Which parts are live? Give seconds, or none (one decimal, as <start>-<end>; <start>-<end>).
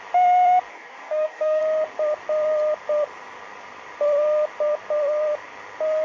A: 0.0-0.7; 1.6-6.0